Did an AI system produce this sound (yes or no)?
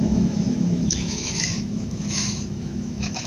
yes